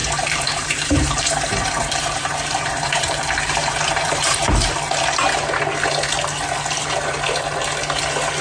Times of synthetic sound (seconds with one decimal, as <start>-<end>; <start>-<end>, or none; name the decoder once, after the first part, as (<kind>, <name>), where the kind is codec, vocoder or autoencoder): 0.0-4.7 (vocoder, BigVGAN v2)

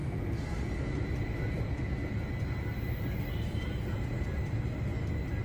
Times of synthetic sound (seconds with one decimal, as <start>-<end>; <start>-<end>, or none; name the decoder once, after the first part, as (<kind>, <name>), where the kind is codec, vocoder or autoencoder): 3.2-5.4 (vocoder, BigVGAN v2)

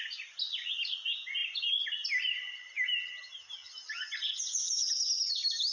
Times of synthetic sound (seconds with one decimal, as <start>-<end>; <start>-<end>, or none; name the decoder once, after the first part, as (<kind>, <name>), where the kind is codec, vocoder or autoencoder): 1.4-3.2 (vocoder, BigVGAN v2)

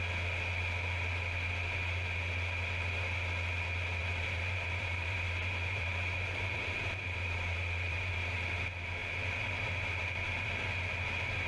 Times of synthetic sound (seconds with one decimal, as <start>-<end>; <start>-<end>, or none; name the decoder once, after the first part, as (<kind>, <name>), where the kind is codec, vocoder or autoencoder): 4.0-8.1 (vocoder, BigVGAN v2)

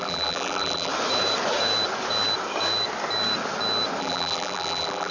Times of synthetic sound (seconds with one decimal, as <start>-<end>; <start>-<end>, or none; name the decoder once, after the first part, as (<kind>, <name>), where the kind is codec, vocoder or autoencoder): 0.0-0.9 (vocoder, BigVGAN v2); 4.0-5.1

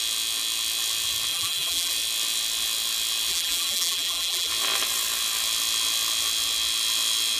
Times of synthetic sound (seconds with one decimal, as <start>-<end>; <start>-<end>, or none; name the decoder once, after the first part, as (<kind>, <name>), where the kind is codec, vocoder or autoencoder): 1.3-1.9 (vocoder, BigVGAN v2); 3.3-4.5